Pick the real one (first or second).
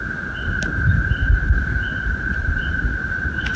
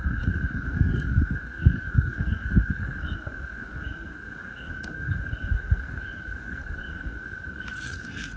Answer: first